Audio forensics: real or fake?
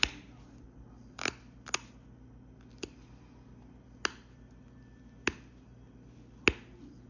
real